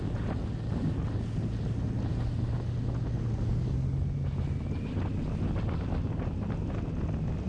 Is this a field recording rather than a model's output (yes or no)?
yes